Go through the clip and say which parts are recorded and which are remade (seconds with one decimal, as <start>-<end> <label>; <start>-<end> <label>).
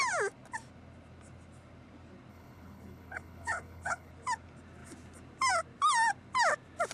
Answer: 0.0-2.3 recorded; 2.3-4.1 remade; 4.1-6.9 recorded